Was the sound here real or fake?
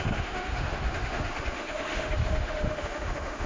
fake